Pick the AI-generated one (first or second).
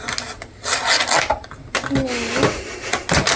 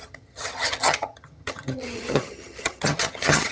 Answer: second